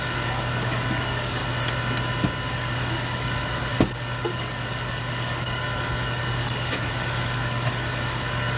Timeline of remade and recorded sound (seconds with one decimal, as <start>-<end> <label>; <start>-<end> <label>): 0.0-1.4 remade; 1.4-2.5 recorded; 2.5-8.6 remade